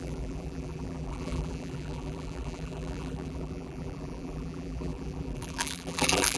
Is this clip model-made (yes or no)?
yes